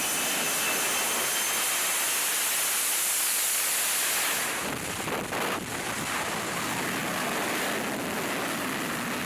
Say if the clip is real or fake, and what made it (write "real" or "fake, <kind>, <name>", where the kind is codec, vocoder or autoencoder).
real